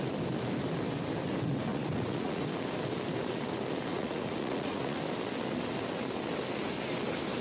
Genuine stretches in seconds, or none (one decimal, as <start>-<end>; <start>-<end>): 0.0-1.7; 2.4-3.9; 5.0-7.4